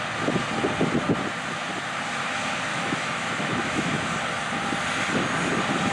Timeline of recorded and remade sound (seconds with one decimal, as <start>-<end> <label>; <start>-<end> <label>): 0.0-2.7 recorded; 2.7-4.1 remade; 4.1-5.9 recorded

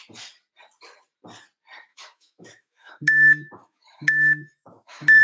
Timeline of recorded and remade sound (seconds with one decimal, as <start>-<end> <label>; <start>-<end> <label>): 0.0-1.9 recorded; 1.9-5.2 remade

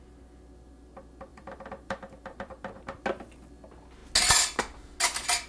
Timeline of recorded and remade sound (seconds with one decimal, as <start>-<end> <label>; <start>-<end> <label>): 0.0-1.3 recorded; 1.3-2.8 remade; 2.8-5.5 recorded

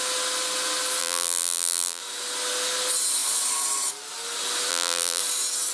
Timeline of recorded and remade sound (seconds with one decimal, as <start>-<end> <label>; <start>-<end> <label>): 0.0-1.0 recorded; 1.0-2.0 remade; 2.0-4.7 recorded; 4.7-5.2 remade; 5.2-5.7 recorded

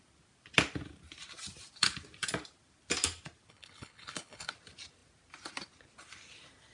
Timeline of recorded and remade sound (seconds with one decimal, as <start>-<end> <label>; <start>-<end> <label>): 0.0-3.5 recorded; 3.5-4.5 remade; 4.5-6.7 recorded

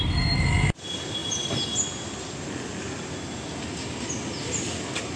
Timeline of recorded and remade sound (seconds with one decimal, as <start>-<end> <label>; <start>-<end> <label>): 0.0-5.2 recorded

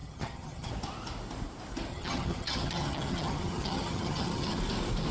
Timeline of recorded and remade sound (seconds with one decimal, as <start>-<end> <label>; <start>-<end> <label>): 0.0-0.7 remade; 0.7-1.9 recorded; 1.9-4.6 remade; 4.6-5.1 recorded

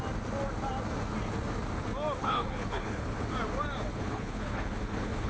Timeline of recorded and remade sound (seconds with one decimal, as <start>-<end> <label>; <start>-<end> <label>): 0.0-2.2 recorded; 2.2-3.2 remade; 3.2-3.9 recorded; 3.9-5.3 remade